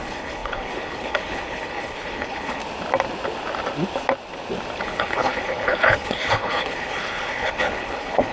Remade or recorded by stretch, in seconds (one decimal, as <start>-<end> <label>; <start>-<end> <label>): 0.0-2.6 remade; 2.6-4.8 recorded; 4.8-8.3 remade